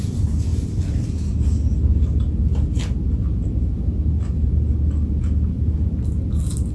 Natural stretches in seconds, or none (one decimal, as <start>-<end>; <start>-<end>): 0.0-6.7